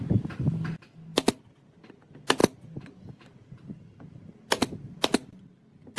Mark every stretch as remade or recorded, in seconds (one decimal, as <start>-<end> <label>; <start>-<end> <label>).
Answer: 0.0-6.0 recorded